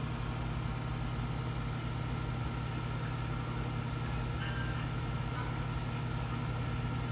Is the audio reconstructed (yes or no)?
no